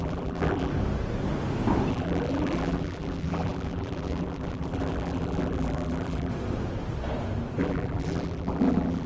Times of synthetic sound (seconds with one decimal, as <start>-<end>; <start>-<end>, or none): 0.0-0.7; 1.9-6.3; 7.6-9.1